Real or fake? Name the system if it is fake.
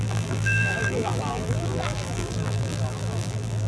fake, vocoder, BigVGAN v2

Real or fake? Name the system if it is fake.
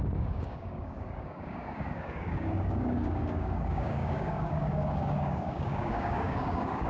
fake, codec, DAC